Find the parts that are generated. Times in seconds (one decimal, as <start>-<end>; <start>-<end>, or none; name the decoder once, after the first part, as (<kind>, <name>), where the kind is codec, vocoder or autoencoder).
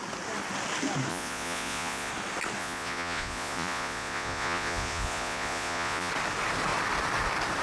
1.1-2.1 (vocoder, Vocos); 2.6-6.1